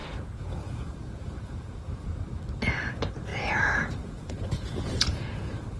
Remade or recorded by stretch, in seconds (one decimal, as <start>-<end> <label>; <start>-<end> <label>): 0.0-2.1 remade; 2.1-3.3 recorded; 3.3-5.8 remade